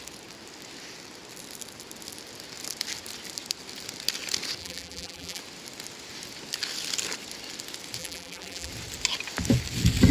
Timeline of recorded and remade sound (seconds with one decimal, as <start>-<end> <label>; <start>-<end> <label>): 0.0-4.6 recorded; 4.6-5.4 remade; 5.4-8.0 recorded; 8.0-8.7 remade; 8.7-10.1 recorded